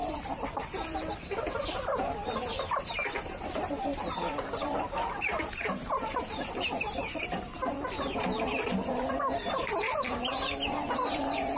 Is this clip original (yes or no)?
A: no